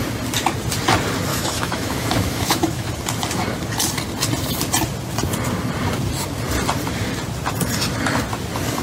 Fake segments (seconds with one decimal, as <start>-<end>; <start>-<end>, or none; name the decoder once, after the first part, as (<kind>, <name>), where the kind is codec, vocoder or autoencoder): 1.3-2.9 (autoencoder, DAC-VAE)